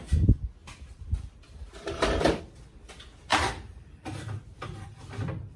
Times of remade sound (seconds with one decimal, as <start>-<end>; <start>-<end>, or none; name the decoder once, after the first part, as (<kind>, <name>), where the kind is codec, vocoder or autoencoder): 0.6-2.4 (vocoder, BigVGAN v2); 3.3-5.6